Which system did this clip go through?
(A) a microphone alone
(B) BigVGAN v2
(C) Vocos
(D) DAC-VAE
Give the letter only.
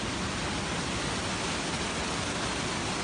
A